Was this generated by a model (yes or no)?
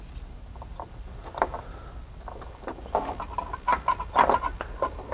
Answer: no